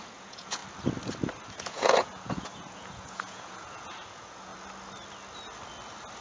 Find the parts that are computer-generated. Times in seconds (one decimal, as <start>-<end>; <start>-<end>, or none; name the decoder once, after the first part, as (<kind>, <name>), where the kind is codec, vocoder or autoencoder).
0.0-0.6 (vocoder, Vocos); 1.5-4.5